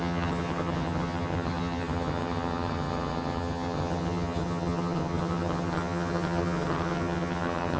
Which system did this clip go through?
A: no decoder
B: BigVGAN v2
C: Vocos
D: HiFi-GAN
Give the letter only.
D